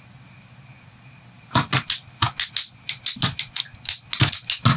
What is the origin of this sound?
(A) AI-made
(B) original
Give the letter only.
B